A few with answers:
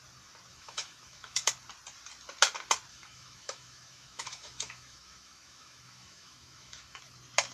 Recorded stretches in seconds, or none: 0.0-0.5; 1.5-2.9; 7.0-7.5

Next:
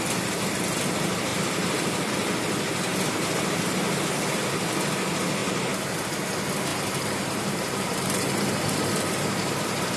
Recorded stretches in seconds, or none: 0.0-1.3; 2.1-2.9; 4.0-5.4; 6.0-6.7; 9.5-10.0

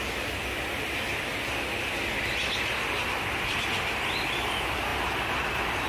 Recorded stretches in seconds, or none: 0.0-4.9

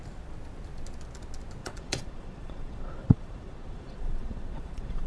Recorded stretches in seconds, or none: 0.0-1.6

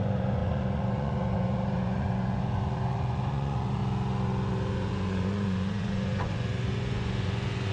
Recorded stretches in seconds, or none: 3.8-4.7

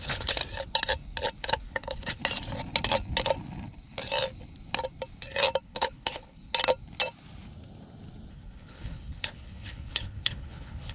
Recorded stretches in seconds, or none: 0.4-1.4; 2.2-5.6; 6.5-8.3